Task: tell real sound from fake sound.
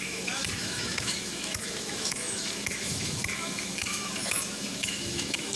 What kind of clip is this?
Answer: fake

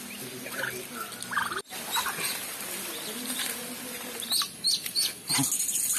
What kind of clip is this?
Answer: real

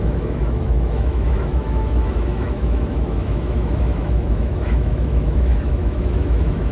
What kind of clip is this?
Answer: fake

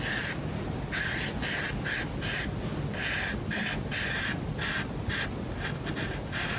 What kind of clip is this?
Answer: real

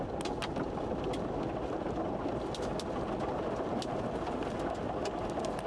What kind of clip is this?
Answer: real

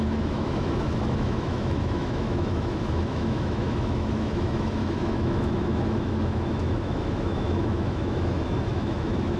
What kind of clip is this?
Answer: fake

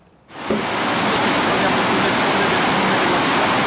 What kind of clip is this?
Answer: real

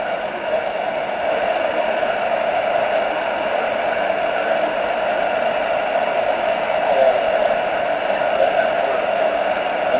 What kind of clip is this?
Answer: real